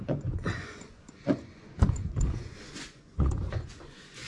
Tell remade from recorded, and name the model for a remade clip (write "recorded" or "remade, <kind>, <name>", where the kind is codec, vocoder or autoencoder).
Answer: remade, vocoder, Vocos